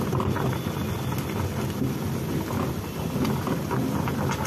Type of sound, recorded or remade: recorded